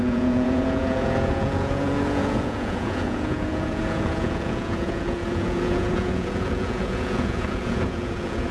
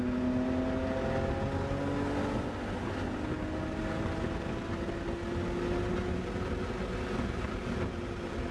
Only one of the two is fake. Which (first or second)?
first